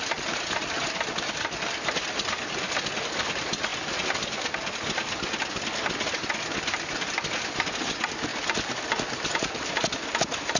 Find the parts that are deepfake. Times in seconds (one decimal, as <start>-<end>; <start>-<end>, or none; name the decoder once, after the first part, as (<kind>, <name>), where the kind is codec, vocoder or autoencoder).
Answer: none